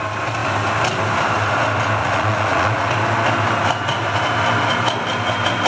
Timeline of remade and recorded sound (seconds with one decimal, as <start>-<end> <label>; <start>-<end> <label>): 0.0-2.0 recorded; 2.0-2.9 remade; 2.9-5.7 recorded